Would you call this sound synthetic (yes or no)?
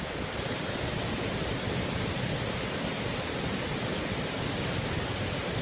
no